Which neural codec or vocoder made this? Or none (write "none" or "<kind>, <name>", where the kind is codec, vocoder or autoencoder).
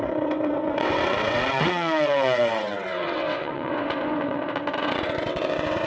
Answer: vocoder, WaveNeXt